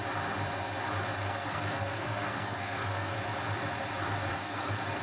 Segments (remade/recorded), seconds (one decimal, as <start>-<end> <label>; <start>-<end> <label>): 0.0-1.2 recorded; 1.2-3.2 remade; 3.2-4.3 recorded; 4.3-5.0 remade